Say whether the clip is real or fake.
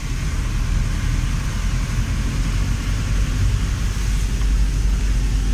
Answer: real